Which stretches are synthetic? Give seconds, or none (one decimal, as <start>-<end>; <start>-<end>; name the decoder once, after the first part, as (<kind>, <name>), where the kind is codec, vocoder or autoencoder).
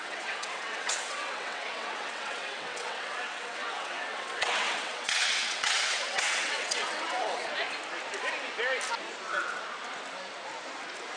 0.0-7.5 (vocoder, WaveNeXt)